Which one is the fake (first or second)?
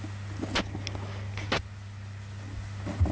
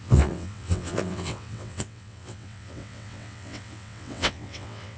second